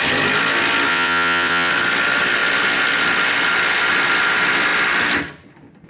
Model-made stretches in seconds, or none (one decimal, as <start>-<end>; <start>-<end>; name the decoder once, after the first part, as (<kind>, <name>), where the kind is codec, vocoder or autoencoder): 0.9-1.7 (vocoder, WaveNeXt)